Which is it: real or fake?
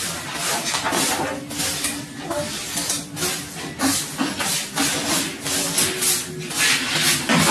real